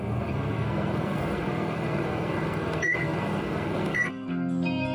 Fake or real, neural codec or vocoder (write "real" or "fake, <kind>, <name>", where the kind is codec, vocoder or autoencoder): fake, codec, SNAC